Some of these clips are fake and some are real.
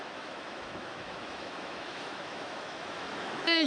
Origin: fake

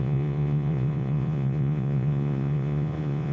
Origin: fake